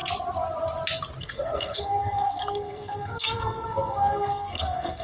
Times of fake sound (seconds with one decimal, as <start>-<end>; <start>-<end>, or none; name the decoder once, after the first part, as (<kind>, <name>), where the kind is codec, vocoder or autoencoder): 1.2-5.0 (codec, SNAC)